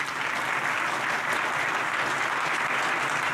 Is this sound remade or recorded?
recorded